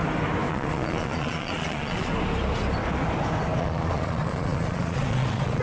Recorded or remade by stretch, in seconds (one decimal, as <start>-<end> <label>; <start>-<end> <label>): 0.0-0.5 recorded; 0.5-2.1 remade; 2.1-3.6 recorded; 3.6-5.6 remade